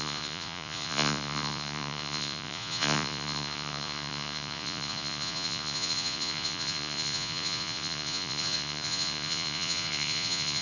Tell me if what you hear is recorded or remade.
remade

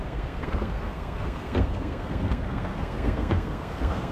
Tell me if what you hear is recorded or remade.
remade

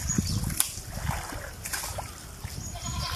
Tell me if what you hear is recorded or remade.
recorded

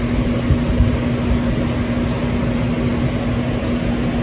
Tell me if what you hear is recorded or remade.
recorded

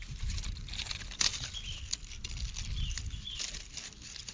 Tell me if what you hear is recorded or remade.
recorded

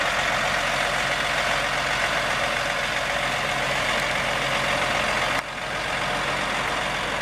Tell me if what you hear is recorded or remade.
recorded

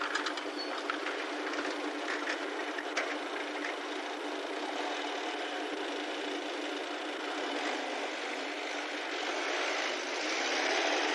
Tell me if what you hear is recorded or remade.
recorded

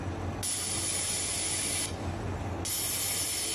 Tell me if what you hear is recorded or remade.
recorded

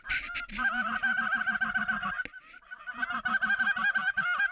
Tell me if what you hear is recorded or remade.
recorded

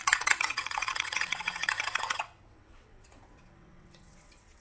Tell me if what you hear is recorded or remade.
remade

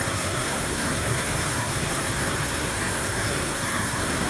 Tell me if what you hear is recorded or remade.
remade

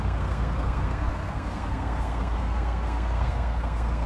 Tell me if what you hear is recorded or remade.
remade